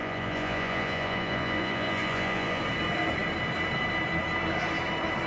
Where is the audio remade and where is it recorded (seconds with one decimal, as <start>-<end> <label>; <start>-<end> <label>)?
0.0-2.6 remade; 2.6-5.3 recorded